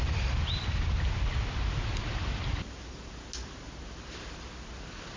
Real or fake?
real